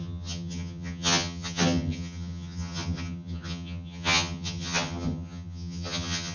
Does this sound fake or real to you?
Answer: fake